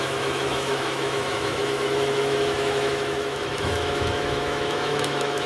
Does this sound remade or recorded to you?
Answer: remade